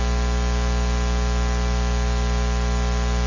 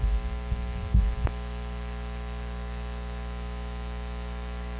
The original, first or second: first